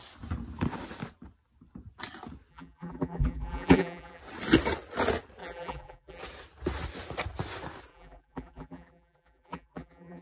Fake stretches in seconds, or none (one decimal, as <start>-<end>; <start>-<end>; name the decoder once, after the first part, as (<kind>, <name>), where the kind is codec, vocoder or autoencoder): 2.5-4.2 (vocoder, BigVGAN v2); 5.4-6.2; 7.9-10.2